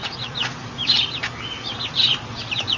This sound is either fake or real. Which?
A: real